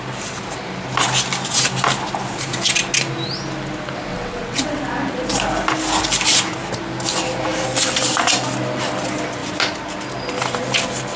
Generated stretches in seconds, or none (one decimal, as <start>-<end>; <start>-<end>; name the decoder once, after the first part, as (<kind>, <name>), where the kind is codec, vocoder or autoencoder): 4.1-4.8 (vocoder, WaveNeXt)